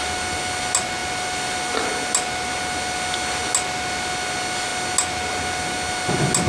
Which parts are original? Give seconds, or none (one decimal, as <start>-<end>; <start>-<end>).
0.0-6.5